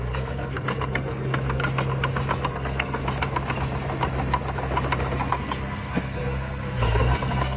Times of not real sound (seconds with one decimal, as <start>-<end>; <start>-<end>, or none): 0.0-1.6; 2.5-3.0; 5.3-7.6